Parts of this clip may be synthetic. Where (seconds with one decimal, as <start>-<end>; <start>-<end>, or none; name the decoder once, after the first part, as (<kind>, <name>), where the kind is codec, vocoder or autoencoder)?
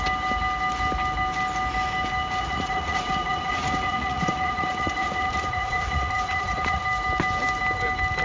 2.4-6.8 (vocoder, Vocos)